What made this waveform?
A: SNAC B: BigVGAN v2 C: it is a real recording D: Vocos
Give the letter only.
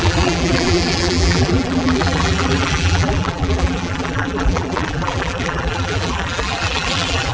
B